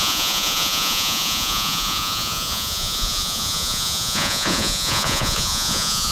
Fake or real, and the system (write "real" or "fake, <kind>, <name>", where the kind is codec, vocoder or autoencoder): fake, vocoder, Vocos